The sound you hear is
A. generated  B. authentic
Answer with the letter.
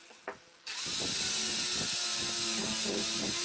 B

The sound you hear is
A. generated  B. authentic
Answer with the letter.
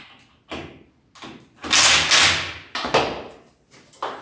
B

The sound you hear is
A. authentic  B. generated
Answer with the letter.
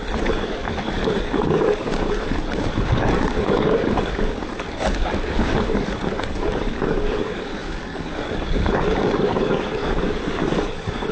B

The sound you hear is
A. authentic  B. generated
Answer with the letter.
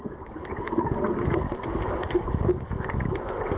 B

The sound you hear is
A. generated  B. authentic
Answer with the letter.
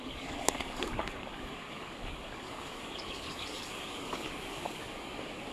A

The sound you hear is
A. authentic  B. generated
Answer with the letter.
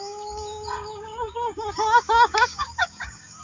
B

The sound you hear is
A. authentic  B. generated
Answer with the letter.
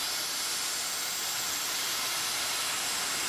A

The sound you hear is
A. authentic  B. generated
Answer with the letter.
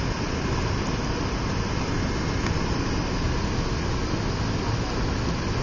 A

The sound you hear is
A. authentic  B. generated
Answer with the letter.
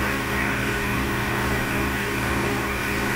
B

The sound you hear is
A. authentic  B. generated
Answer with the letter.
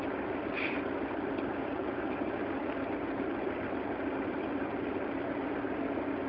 A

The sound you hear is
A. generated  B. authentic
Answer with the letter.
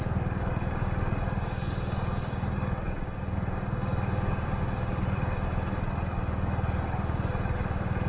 A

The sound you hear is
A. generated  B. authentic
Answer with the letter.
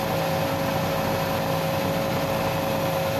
B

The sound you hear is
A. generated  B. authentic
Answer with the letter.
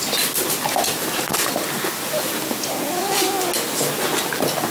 B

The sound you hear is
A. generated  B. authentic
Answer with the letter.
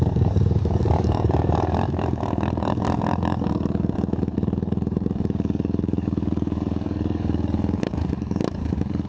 A